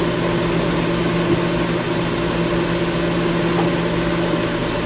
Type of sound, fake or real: real